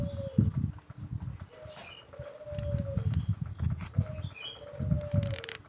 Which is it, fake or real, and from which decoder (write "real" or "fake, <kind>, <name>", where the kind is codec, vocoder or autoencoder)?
real